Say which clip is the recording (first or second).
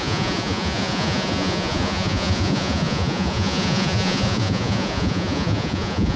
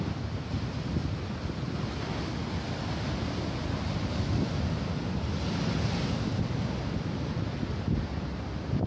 second